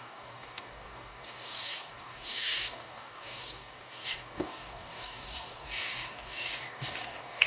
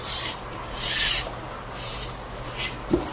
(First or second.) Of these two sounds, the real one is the second